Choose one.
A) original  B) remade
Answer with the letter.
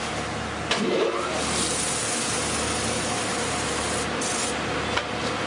A